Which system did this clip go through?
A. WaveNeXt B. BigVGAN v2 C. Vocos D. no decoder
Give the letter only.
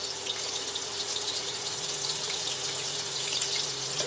C